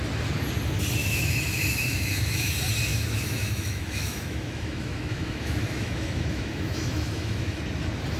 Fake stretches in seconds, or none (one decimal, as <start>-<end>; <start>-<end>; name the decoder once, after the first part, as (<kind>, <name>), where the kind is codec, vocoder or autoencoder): 1.0-2.5 (autoencoder, DAC-VAE); 2.9-7.6